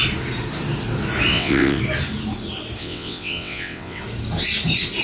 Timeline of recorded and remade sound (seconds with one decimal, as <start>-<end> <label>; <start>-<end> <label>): 0.0-1.3 recorded; 1.3-1.8 remade; 1.8-2.8 recorded; 2.8-4.0 remade; 4.0-5.0 recorded